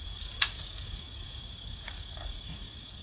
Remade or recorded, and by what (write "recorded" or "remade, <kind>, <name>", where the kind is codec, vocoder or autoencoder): remade, codec, DAC